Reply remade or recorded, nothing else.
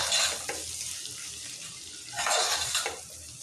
recorded